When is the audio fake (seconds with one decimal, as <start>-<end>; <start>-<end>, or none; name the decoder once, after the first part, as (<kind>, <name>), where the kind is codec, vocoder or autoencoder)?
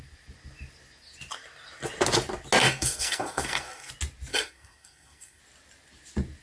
2.6-3.9 (codec, SNAC); 4.3-5.4